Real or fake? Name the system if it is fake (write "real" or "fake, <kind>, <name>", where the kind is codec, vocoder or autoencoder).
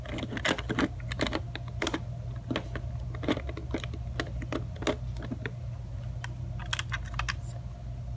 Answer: real